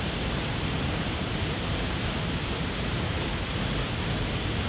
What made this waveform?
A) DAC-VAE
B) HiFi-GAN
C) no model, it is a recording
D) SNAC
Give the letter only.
C